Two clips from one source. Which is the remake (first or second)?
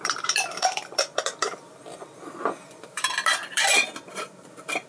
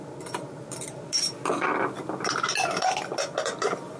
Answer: first